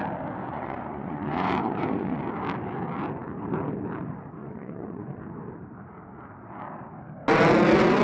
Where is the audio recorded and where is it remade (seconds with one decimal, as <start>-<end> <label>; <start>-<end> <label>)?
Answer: 0.0-0.4 recorded; 0.4-2.2 remade; 2.2-4.4 recorded; 4.4-5.2 remade; 5.2-8.0 recorded